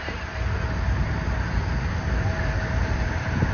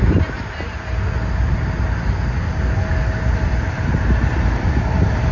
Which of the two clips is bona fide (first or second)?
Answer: second